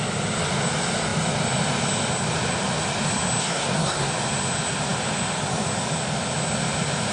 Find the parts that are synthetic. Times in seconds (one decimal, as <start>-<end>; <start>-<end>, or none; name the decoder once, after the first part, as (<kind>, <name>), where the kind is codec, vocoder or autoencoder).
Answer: 3.4-4.1 (codec, SNAC)